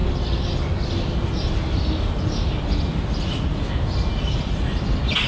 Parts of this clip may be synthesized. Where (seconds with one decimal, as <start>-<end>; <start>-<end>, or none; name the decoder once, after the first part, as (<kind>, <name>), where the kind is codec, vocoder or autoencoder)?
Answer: none